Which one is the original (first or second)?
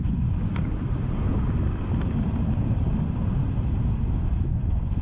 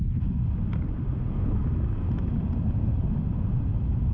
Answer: second